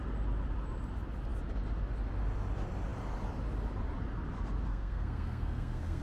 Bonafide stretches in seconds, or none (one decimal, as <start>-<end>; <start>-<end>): 0.0-4.7